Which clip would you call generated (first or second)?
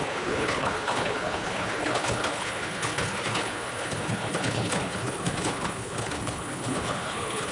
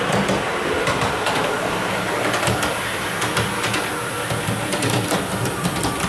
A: first